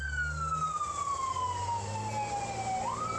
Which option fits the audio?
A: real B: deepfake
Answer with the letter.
A